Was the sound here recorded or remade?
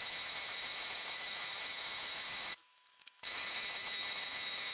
remade